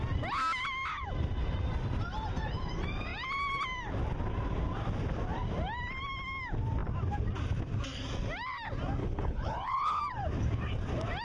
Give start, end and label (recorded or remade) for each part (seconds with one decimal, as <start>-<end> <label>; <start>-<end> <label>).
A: 0.0-9.0 recorded; 9.0-10.0 remade; 10.0-11.2 recorded

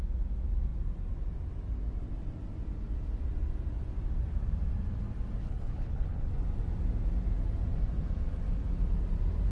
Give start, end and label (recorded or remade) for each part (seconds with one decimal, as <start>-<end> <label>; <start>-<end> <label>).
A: 0.0-5.4 recorded; 5.4-6.3 remade; 6.3-9.5 recorded